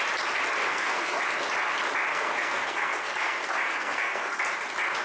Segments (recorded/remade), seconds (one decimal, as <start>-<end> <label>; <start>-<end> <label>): 0.0-0.6 recorded; 0.6-1.2 remade; 1.2-2.1 recorded; 2.1-4.4 remade; 4.4-5.0 recorded